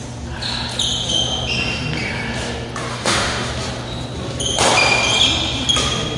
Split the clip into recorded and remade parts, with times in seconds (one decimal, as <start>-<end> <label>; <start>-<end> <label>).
0.0-2.9 recorded; 2.9-3.5 remade; 3.5-6.2 recorded